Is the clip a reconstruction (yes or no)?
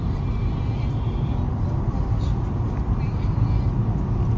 no